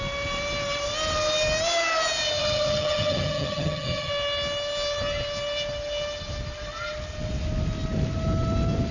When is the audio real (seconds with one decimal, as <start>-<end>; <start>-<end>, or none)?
0.0-2.4; 4.1-8.9